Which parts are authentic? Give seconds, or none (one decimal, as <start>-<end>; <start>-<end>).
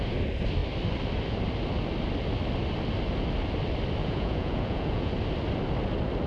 0.0-4.0; 5.1-6.3